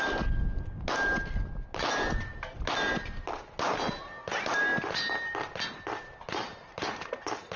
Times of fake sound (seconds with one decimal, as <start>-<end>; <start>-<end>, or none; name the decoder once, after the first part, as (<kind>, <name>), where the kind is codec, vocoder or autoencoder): none